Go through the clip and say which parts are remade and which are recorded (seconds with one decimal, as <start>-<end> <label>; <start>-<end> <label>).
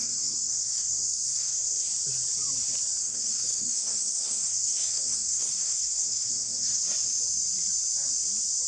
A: 0.0-1.9 remade; 1.9-3.0 recorded; 3.0-6.8 remade; 6.8-8.7 recorded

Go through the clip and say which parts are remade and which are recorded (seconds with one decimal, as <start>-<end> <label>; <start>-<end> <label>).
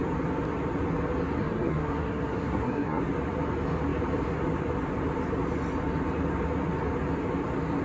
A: 0.0-1.4 recorded; 1.4-3.0 remade; 3.0-7.8 recorded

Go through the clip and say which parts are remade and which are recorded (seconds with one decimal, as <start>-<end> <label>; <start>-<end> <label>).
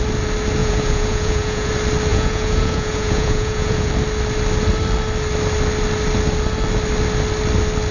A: 0.0-0.6 recorded; 0.6-1.7 remade; 1.7-2.1 recorded; 2.1-3.9 remade; 3.9-7.9 recorded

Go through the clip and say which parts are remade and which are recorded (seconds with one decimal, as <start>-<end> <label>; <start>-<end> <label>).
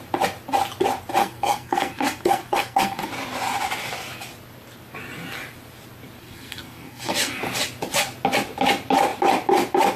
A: 0.0-1.2 recorded; 1.2-3.1 remade; 3.1-6.2 recorded; 6.2-7.4 remade; 7.4-10.0 recorded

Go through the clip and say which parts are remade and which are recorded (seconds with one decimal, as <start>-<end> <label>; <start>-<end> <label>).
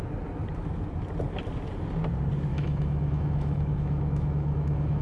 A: 0.0-2.5 recorded; 2.5-5.0 remade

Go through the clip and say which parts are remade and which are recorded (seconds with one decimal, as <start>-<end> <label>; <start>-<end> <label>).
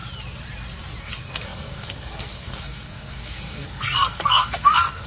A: 0.0-1.0 recorded; 1.0-5.1 remade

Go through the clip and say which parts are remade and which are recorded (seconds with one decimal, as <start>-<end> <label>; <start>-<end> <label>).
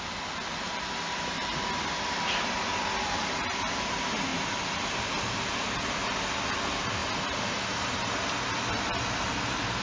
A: 0.0-9.8 recorded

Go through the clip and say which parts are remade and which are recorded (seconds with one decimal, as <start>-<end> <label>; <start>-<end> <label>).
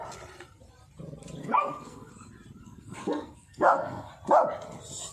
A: 0.0-1.4 recorded; 1.4-2.1 remade; 2.1-2.6 recorded; 2.6-4.1 remade; 4.1-5.1 recorded